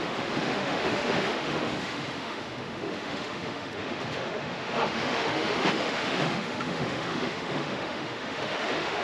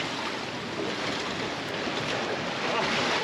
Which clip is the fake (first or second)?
first